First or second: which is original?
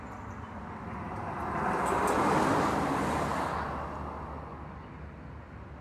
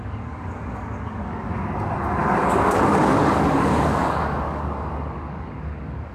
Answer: first